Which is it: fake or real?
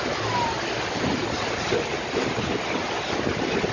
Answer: real